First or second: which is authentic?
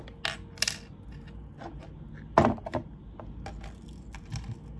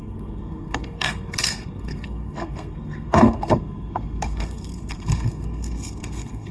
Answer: first